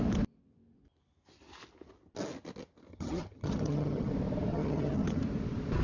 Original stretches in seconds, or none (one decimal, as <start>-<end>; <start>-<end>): 0.0-2.9; 4.1-4.5; 5.2-5.8